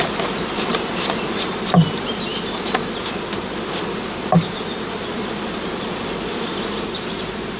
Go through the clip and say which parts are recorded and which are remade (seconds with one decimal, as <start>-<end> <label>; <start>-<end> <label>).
0.0-2.3 remade; 2.3-3.8 recorded; 3.8-7.6 remade